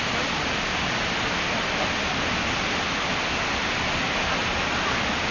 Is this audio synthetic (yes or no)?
no